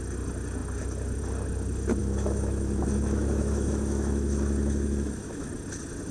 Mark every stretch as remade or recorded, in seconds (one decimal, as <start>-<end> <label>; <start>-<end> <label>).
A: 0.0-2.0 recorded; 2.0-5.5 remade; 5.5-6.1 recorded